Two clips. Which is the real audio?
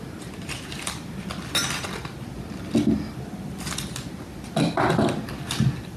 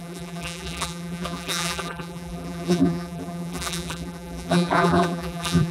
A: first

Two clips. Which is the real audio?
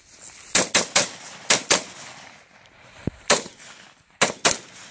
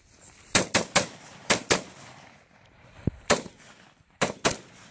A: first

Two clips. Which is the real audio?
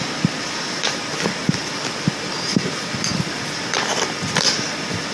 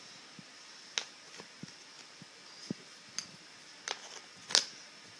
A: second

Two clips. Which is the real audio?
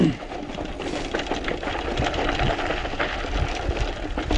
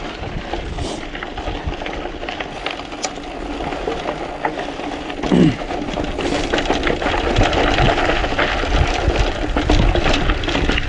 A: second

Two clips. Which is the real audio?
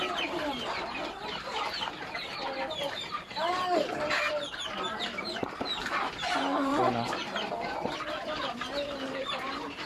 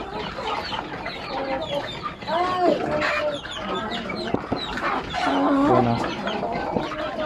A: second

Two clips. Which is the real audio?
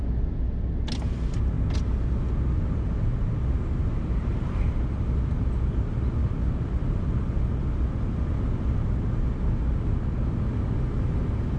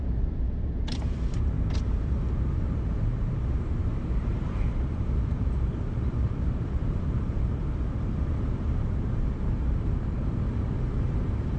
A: first